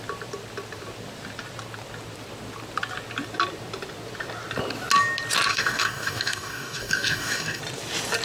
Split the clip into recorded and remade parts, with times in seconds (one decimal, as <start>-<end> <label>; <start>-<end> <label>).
0.0-5.5 recorded; 5.5-7.6 remade; 7.6-8.2 recorded